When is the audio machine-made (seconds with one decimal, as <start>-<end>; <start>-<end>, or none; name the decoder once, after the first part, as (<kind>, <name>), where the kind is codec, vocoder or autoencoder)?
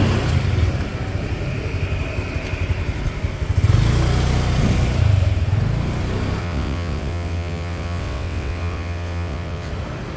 6.4-9.7 (vocoder, WaveNeXt)